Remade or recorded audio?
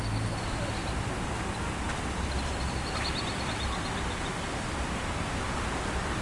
recorded